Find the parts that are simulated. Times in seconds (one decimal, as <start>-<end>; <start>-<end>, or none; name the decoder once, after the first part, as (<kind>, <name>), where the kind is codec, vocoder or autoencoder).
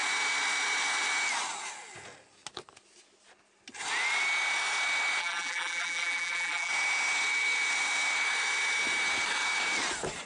5.2-6.7 (vocoder, BigVGAN v2)